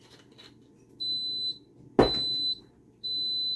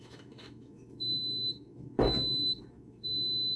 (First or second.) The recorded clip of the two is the first